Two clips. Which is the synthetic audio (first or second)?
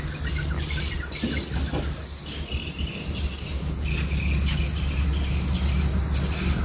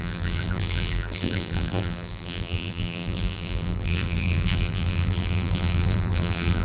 second